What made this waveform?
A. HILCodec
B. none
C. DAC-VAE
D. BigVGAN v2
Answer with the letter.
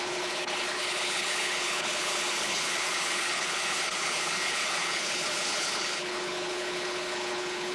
A